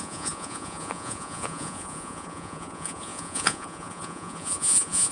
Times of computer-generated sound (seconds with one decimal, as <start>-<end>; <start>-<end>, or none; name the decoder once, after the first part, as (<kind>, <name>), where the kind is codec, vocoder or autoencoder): 0.0-5.1 (vocoder, Vocos)